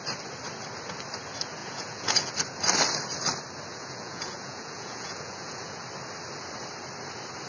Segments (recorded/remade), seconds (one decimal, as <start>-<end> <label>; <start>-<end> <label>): 0.0-1.6 recorded; 1.6-2.3 remade; 2.3-3.7 recorded; 3.7-5.8 remade; 5.8-7.5 recorded